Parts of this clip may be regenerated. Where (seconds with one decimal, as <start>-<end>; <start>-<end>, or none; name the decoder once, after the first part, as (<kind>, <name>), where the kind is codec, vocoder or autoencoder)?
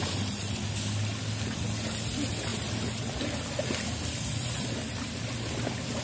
2.5-4.6 (vocoder, BigVGAN v2)